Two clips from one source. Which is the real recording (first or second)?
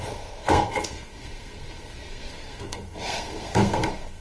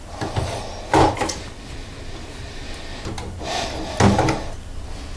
second